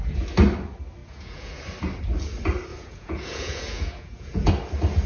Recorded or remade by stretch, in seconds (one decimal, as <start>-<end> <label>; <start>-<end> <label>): 0.0-1.0 recorded; 1.0-1.6 remade; 1.6-2.7 recorded; 2.7-4.5 remade; 4.5-5.1 recorded